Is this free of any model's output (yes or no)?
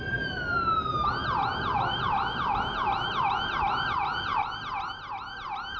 yes